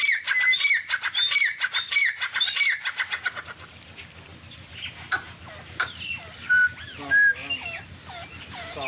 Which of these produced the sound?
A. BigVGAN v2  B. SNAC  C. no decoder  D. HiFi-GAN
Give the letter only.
C